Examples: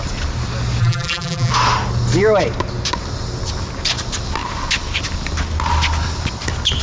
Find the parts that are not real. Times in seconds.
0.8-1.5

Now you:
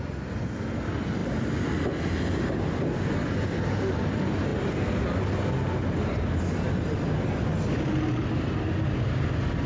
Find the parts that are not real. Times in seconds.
none